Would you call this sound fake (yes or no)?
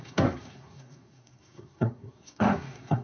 yes